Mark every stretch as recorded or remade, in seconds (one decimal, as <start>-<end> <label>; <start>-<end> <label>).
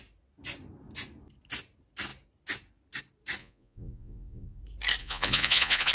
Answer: 0.0-3.4 recorded; 3.4-4.6 remade; 4.6-5.0 recorded; 5.0-5.9 remade